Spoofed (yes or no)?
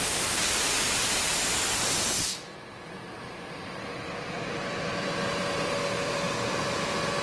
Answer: yes